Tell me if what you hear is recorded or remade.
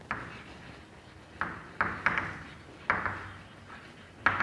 recorded